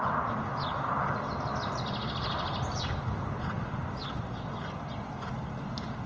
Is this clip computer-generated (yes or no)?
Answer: no